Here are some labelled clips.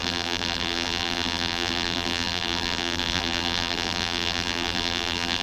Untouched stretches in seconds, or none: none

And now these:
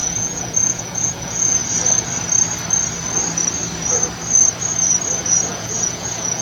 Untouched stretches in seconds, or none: 1.6-5.4

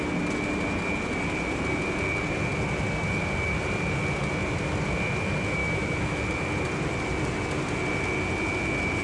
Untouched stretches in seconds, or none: 0.0-5.6; 6.2-9.0

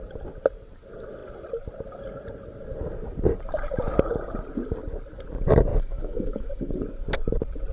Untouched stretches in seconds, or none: 0.0-5.7; 6.7-7.7

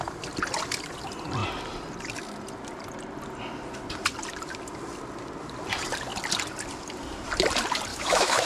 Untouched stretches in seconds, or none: 0.0-7.9

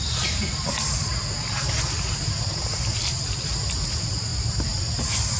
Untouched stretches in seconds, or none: 0.0-5.4